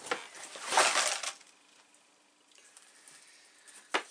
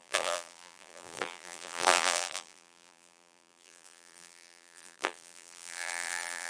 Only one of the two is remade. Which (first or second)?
second